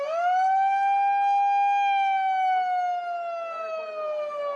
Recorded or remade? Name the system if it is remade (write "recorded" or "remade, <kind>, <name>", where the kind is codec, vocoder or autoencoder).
recorded